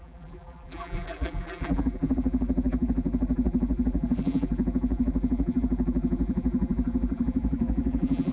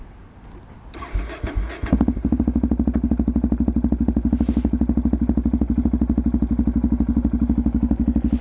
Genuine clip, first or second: second